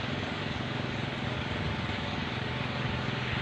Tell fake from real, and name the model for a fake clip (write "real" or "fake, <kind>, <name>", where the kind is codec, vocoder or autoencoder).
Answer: fake, codec, DAC